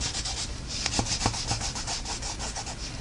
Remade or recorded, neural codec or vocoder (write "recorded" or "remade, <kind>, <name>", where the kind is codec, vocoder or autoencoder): recorded